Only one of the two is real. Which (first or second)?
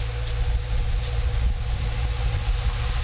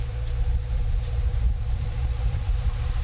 first